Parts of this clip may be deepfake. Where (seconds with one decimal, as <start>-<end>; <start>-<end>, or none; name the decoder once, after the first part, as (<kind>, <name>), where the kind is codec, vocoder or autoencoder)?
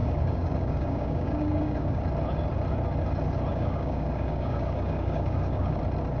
0.0-2.0 (codec, DAC); 3.5-5.8